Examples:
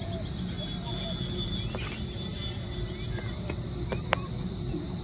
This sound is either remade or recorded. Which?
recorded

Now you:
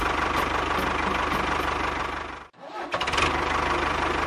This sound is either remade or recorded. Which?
recorded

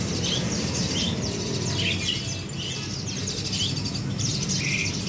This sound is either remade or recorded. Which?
recorded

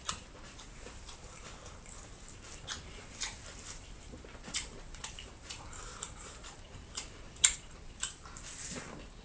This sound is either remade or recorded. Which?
remade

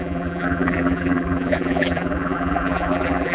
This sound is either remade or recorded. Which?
remade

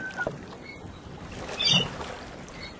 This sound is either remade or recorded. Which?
recorded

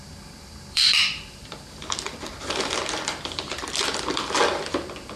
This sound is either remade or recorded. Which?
remade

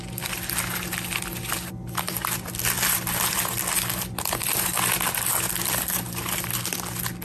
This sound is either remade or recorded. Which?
recorded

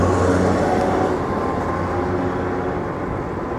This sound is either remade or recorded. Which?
recorded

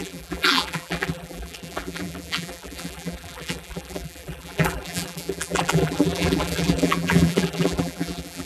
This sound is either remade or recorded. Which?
remade